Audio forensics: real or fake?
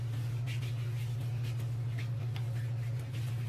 real